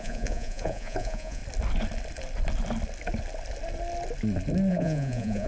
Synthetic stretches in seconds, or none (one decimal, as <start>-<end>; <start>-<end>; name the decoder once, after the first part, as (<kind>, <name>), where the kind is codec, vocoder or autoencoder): 0.0-1.4 (vocoder, Vocos); 4.7-5.5

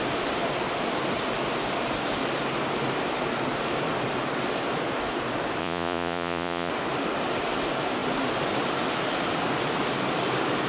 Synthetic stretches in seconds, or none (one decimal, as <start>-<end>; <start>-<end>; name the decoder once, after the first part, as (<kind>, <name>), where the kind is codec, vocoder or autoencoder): 5.6-6.7 (vocoder, Vocos)